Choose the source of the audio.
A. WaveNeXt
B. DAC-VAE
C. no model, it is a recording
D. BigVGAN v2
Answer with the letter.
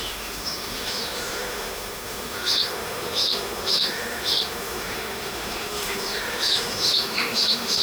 B